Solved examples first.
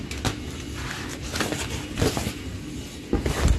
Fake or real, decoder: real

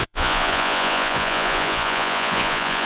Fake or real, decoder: fake, vocoder, Vocos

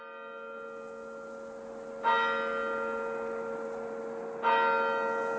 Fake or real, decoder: real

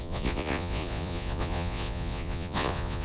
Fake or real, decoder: fake, vocoder, Vocos